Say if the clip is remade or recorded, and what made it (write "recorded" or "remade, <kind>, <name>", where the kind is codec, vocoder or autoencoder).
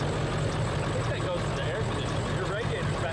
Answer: recorded